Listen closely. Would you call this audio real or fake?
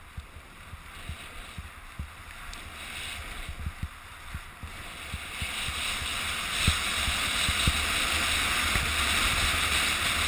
real